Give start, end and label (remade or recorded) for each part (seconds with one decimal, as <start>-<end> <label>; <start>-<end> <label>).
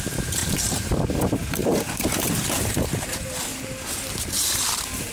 0.0-0.4 recorded; 0.4-1.1 remade; 1.1-1.6 recorded; 1.6-5.1 remade